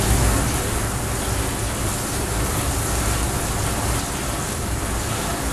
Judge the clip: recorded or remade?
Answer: recorded